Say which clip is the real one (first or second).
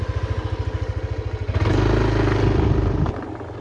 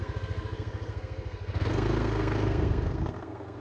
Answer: first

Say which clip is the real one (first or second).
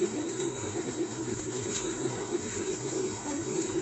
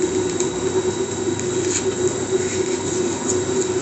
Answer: second